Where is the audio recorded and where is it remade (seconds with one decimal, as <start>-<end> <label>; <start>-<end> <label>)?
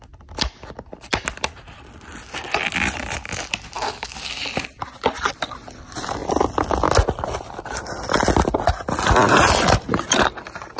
0.0-10.8 recorded